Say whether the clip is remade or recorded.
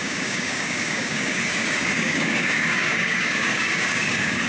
remade